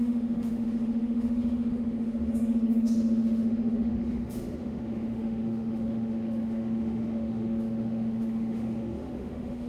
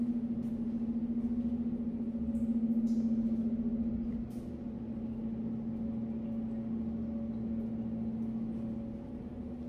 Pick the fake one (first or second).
first